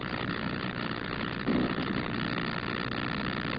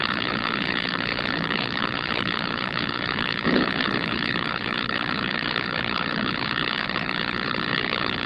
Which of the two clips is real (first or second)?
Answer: first